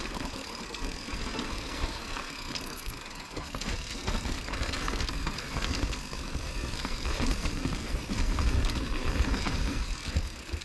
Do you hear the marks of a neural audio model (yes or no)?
yes